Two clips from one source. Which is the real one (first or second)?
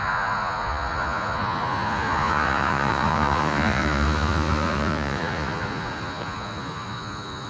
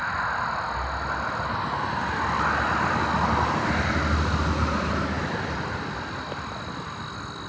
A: second